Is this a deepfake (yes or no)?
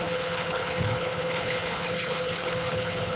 yes